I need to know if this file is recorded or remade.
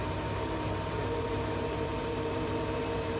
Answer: remade